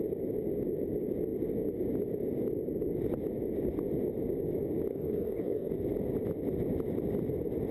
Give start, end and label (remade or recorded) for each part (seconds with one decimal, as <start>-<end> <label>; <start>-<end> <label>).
0.0-4.9 recorded; 4.9-5.7 remade; 5.7-7.7 recorded